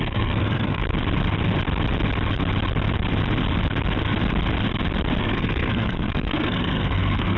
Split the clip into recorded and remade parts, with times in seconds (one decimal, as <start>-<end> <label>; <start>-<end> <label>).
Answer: 0.0-0.8 remade; 0.8-5.2 recorded; 5.2-7.4 remade